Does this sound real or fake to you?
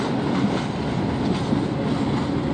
real